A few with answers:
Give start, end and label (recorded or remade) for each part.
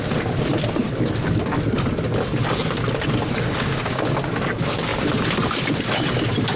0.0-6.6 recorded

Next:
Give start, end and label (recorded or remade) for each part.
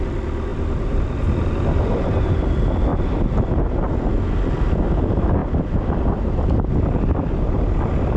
0.0-8.2 recorded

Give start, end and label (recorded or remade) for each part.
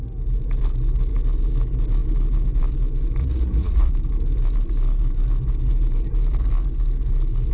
0.0-3.2 recorded; 3.2-3.9 remade; 3.9-7.5 recorded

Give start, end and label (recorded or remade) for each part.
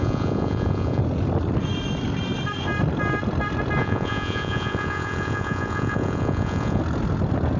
0.0-1.0 remade; 1.0-3.8 recorded; 3.8-6.8 remade; 6.8-7.6 recorded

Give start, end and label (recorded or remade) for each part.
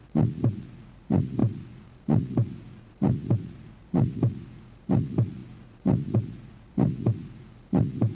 0.0-8.1 remade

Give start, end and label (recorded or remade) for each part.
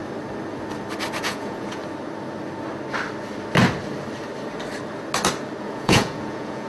0.0-1.2 recorded; 1.2-1.8 remade; 1.8-5.6 recorded; 5.6-6.7 remade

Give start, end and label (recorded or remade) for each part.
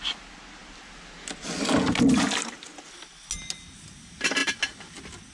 0.0-5.3 recorded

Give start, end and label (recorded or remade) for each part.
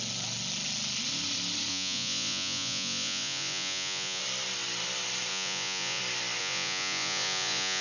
0.0-1.7 recorded; 1.7-4.2 remade; 4.2-5.3 recorded; 5.3-6.0 remade; 6.0-6.4 recorded; 6.4-7.8 remade